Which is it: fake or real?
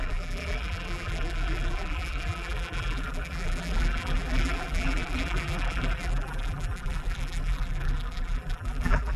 fake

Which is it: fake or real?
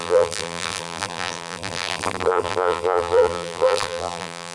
fake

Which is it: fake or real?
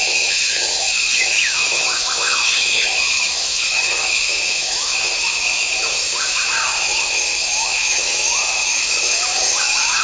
fake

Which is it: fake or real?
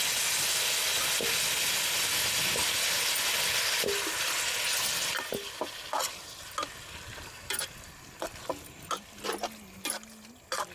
real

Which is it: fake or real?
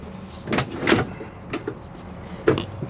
real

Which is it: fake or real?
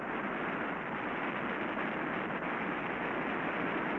real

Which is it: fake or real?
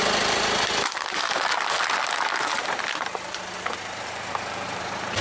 real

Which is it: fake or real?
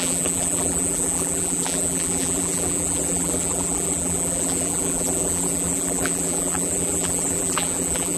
fake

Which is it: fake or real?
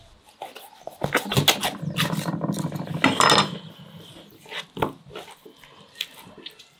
real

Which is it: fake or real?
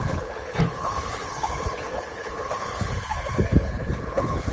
fake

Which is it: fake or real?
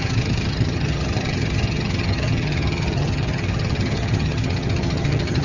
fake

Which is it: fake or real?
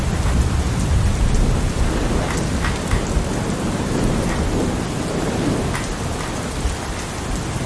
real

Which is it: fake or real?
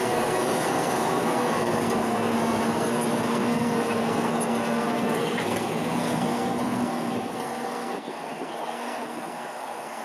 fake